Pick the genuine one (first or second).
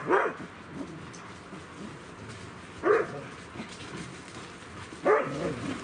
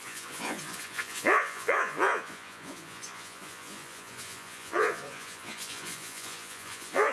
first